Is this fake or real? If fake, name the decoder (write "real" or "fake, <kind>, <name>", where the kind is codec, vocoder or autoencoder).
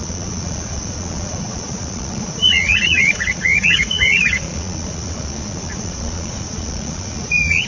fake, vocoder, Vocos